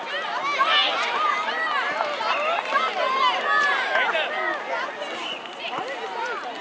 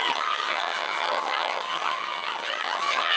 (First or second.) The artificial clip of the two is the second